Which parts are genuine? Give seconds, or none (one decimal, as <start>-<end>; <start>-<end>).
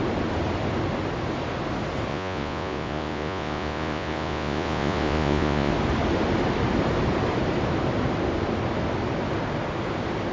0.0-2.1; 5.7-10.3